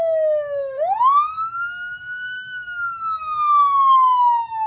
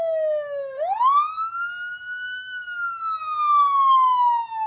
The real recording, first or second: second